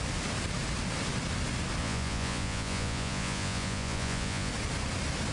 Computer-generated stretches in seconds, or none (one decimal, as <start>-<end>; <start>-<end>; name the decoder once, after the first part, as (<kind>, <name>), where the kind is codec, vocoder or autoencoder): 1.8-4.5 (vocoder, Vocos)